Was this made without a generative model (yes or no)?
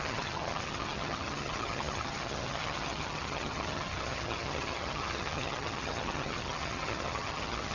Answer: no